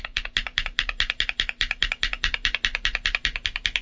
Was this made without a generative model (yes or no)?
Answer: no